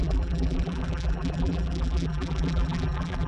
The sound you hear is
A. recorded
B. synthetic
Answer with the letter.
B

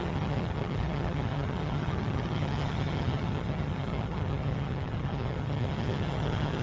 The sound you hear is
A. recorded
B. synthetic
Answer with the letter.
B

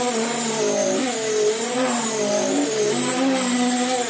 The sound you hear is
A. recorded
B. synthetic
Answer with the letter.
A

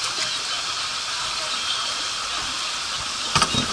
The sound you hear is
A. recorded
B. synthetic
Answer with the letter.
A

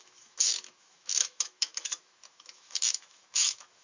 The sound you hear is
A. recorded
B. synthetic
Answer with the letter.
B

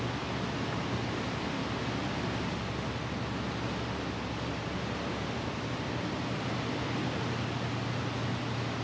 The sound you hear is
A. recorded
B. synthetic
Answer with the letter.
A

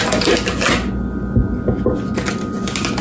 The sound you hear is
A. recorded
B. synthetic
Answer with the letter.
A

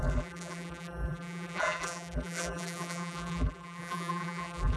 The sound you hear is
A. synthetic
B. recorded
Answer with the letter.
A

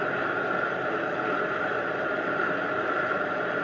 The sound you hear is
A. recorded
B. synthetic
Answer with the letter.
A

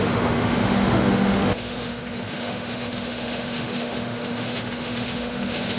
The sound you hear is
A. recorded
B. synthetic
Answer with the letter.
B